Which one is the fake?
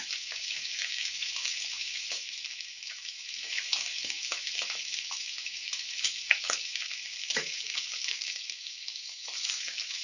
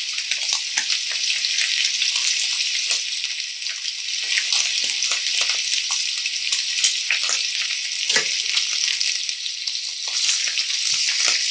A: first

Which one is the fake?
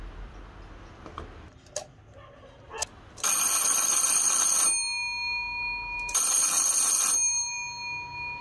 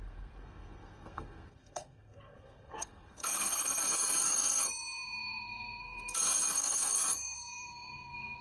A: second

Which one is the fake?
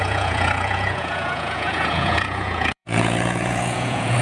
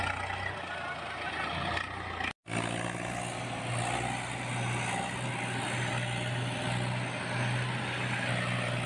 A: first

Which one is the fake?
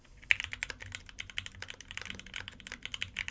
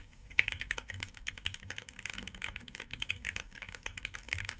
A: second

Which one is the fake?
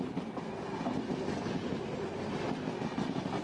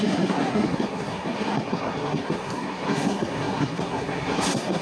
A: second